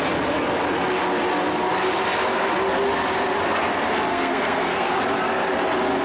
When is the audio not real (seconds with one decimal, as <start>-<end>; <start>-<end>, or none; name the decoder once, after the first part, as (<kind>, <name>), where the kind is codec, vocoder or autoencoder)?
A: 4.1-5.0 (codec, SNAC)